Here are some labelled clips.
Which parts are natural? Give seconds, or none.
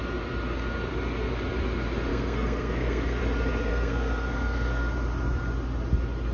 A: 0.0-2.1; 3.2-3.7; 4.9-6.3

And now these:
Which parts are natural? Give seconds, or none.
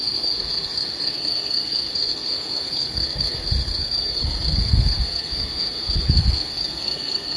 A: none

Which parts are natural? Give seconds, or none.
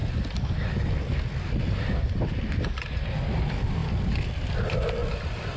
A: 0.0-5.6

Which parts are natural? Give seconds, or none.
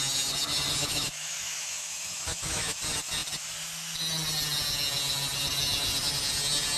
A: 0.0-0.8; 2.8-6.8